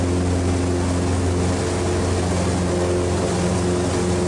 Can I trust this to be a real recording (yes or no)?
yes